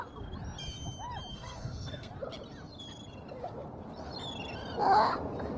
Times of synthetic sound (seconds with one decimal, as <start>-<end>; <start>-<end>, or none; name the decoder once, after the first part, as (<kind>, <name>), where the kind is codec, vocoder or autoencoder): 1.3-2.1 (codec, SNAC)